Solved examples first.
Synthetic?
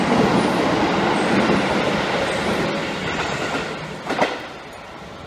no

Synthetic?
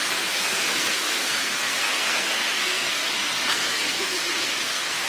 yes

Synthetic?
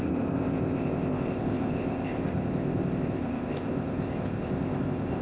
yes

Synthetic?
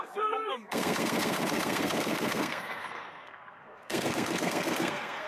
yes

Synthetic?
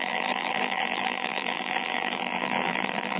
yes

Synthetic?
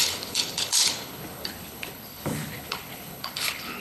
yes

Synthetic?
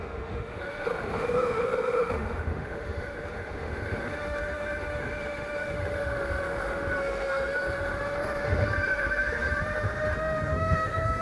yes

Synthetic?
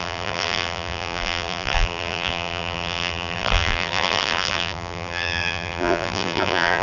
yes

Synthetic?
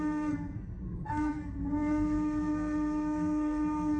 yes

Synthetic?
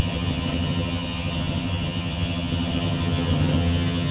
yes